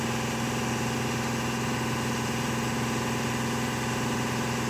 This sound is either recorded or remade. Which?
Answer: recorded